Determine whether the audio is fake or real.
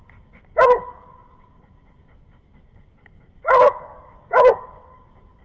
fake